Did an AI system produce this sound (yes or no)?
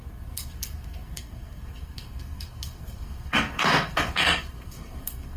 yes